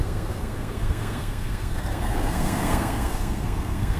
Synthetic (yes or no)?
yes